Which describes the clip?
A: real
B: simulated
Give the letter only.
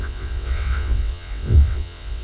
B